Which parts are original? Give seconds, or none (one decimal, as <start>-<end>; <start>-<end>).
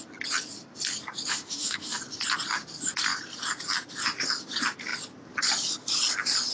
0.0-1.3; 2.0-6.5